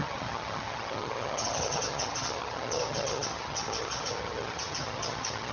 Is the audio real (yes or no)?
no